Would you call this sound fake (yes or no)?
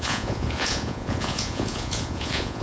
yes